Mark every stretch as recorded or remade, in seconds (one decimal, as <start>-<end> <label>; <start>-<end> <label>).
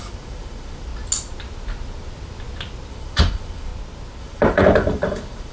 0.0-0.9 remade; 0.9-2.9 recorded; 2.9-3.7 remade; 3.7-4.2 recorded; 4.2-5.5 remade